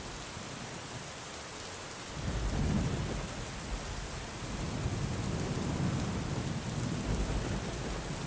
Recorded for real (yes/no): yes